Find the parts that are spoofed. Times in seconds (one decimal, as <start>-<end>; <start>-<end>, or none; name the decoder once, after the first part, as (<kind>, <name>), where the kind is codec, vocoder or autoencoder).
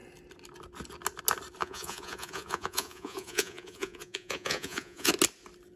1.6-5.1 (vocoder, Vocos)